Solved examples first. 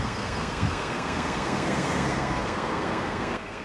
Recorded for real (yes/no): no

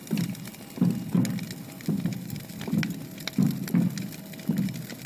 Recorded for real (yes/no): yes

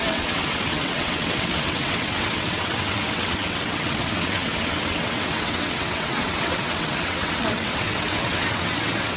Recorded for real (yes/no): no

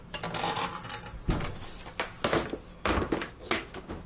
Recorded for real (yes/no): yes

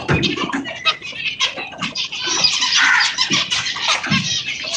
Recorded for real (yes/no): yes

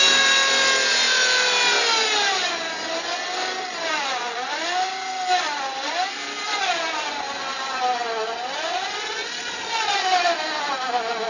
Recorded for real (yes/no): yes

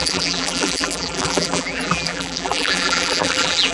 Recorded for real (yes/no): no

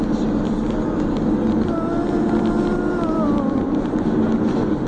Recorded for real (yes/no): yes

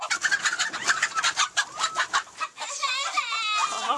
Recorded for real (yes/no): yes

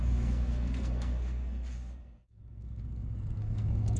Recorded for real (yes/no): no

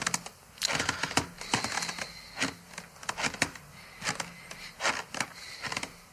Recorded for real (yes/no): yes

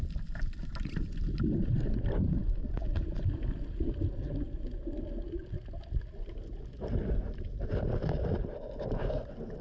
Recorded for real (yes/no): yes